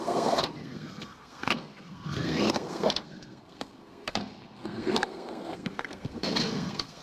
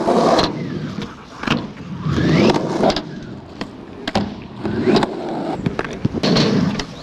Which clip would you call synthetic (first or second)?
first